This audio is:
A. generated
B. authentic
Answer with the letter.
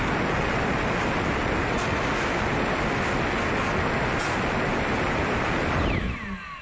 B